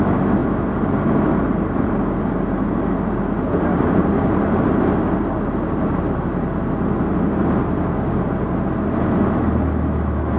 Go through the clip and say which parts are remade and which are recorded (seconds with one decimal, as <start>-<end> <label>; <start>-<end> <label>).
0.0-10.4 recorded